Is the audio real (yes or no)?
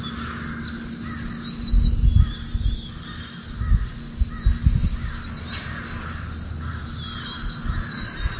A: yes